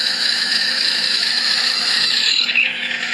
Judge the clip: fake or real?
fake